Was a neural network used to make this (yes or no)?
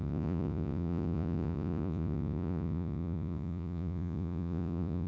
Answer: yes